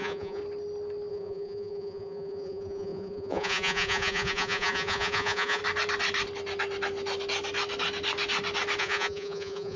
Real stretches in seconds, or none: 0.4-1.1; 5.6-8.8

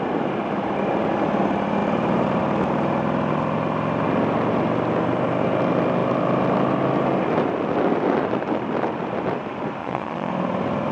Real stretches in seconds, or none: 0.0-9.8; 10.3-10.9

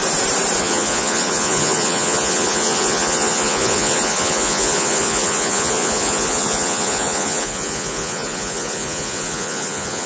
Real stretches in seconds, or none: 0.0-0.6

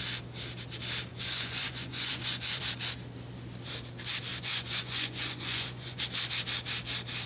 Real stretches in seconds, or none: 0.0-1.1; 2.6-4.3; 6.0-7.3

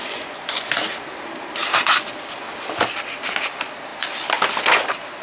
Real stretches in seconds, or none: 0.7-5.2